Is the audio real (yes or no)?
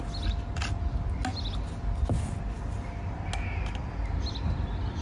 yes